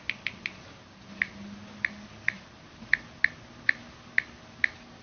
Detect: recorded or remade recorded